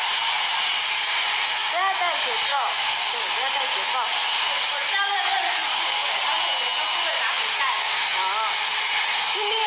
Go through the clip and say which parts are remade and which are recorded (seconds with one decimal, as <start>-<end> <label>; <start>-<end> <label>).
0.0-2.5 recorded; 2.5-3.3 remade; 3.3-9.7 recorded